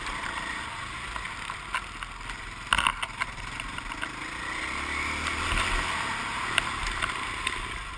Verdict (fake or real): real